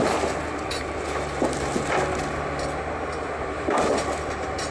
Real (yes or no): yes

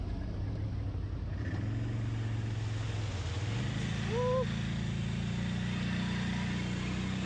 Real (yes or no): yes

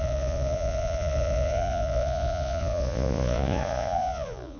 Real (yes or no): no